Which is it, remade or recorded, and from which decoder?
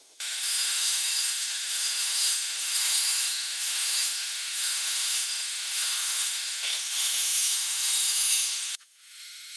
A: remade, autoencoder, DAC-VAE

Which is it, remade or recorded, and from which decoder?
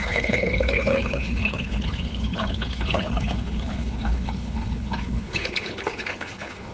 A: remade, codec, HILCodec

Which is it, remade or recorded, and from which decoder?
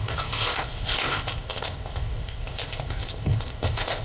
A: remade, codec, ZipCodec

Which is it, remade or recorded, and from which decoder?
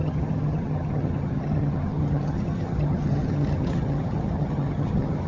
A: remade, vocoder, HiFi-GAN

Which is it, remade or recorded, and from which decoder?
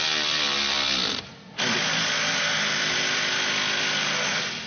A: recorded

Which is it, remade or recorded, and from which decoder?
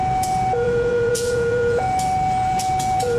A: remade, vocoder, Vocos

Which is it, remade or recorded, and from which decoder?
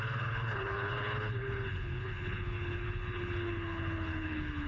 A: remade, codec, HILCodec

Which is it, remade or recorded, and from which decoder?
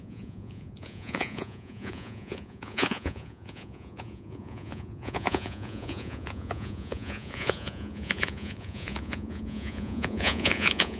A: remade, vocoder, Vocos